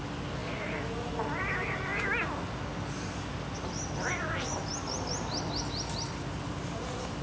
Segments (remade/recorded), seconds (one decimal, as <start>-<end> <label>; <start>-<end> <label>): 0.0-7.2 recorded